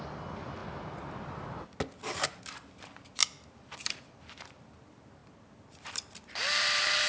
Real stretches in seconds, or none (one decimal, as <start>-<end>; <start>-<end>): 0.0-3.2; 4.5-5.2; 6.1-7.1